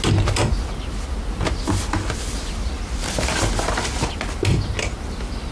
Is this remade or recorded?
recorded